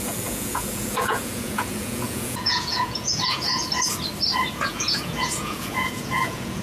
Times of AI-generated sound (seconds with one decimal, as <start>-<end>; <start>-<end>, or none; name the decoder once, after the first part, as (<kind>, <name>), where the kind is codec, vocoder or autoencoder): 0.0-3.6 (vocoder, Vocos); 4.5-6.6